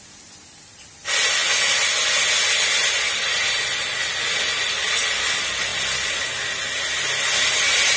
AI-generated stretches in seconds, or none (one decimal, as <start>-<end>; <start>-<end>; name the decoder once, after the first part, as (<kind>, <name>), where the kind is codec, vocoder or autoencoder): none